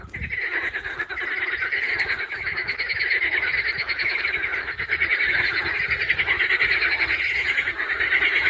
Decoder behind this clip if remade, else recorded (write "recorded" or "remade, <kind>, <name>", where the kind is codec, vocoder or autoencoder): recorded